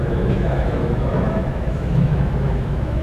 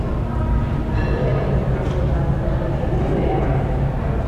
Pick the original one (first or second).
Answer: second